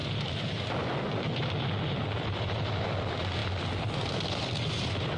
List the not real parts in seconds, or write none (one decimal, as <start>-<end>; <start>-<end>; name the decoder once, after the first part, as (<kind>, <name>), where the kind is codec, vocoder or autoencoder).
none

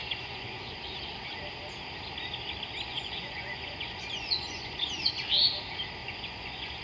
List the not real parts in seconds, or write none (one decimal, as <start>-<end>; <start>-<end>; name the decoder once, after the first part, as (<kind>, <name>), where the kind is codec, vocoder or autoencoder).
0.0-0.8 (vocoder, Vocos); 2.9-5.0; 6.0-6.8

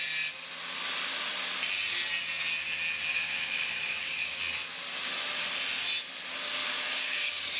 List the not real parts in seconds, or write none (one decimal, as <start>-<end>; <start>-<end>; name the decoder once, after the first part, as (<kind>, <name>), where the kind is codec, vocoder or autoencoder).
3.1-4.4 (codec, DAC); 6.6-7.6

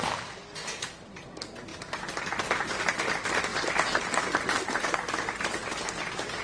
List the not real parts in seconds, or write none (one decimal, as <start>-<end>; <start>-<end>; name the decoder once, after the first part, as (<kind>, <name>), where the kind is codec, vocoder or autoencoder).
3.5-5.7 (vocoder, BigVGAN v2)

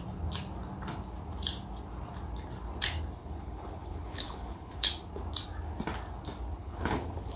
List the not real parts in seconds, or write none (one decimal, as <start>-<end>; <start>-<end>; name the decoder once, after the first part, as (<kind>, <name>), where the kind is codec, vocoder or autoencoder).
3.2-4.9 (codec, HILCodec); 6.6-7.4